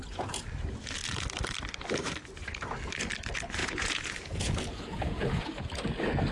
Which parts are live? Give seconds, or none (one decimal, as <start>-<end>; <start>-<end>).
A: 0.0-3.6; 5.6-6.3